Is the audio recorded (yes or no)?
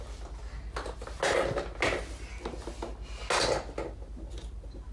yes